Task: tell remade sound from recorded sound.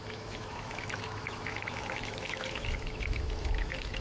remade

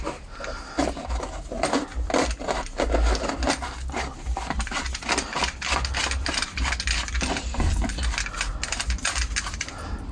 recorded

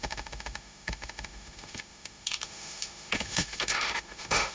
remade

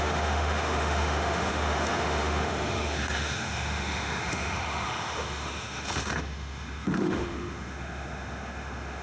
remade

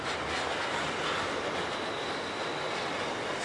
recorded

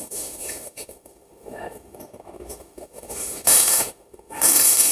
remade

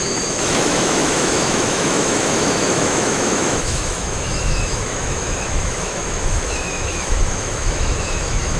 remade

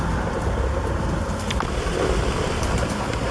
recorded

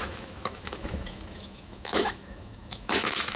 remade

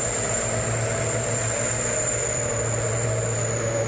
recorded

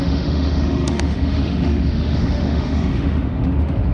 remade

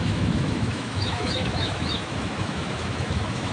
remade